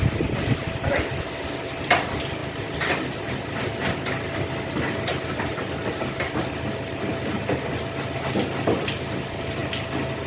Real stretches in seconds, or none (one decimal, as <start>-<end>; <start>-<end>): 0.0-9.6